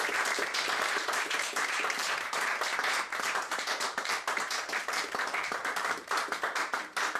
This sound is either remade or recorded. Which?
remade